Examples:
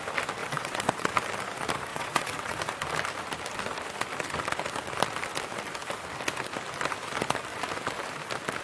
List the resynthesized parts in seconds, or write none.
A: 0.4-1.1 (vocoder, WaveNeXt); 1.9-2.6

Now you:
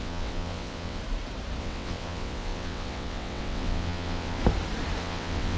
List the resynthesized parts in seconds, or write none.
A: 0.0-1.0 (vocoder, WaveNeXt); 1.6-4.4; 5.0-5.6